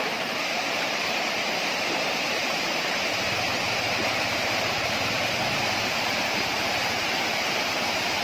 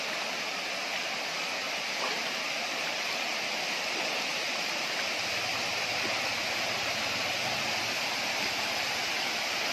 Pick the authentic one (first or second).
second